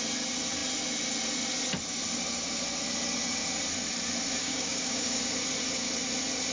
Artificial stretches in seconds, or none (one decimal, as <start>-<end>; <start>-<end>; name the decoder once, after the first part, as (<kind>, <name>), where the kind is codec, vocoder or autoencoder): 4.4-5.2 (codec, DAC)